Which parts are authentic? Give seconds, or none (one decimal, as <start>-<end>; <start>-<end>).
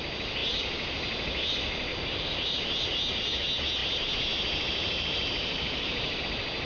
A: 0.0-1.9; 2.5-3.8; 6.2-6.7